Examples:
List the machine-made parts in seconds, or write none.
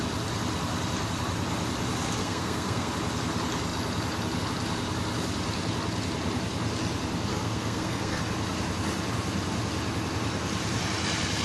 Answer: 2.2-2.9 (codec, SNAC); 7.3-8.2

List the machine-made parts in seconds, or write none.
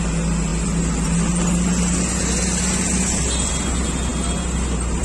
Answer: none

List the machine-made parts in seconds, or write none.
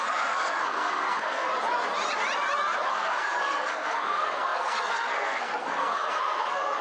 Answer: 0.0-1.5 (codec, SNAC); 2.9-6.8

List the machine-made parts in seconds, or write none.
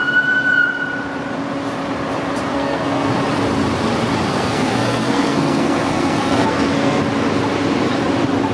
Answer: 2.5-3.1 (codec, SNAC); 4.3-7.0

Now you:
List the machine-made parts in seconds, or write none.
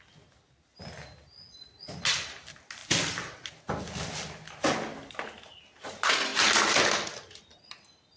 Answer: none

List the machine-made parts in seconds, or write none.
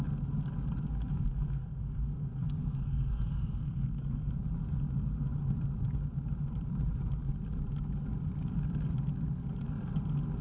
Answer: 1.1-4.3 (codec, SNAC)